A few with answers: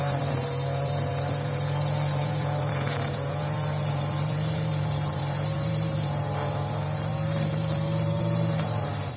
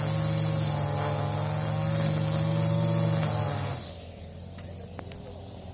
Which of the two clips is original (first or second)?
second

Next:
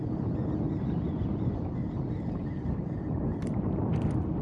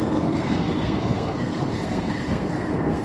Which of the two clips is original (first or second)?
first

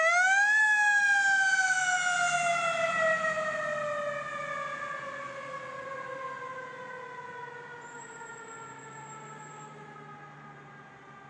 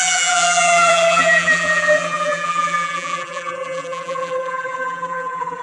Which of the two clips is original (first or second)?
first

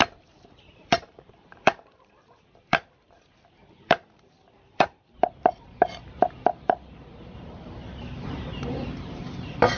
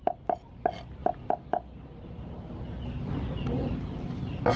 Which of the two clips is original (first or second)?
second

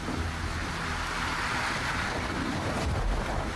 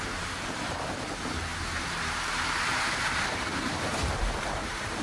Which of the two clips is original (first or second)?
first